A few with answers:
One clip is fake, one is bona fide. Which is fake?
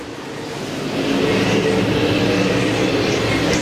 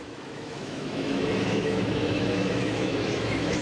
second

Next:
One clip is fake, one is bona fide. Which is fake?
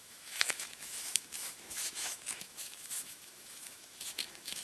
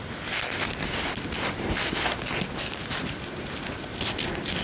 first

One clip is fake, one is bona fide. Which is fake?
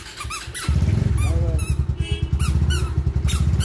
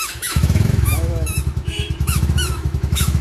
second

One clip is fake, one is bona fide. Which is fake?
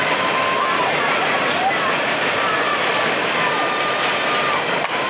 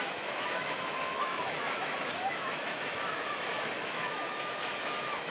second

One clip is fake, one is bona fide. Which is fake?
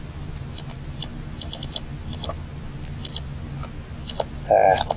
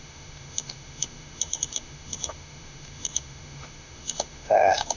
second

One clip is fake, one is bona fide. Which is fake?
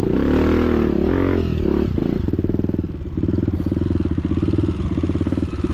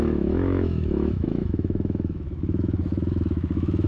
second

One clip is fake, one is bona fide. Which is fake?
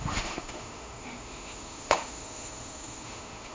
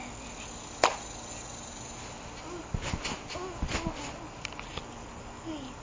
first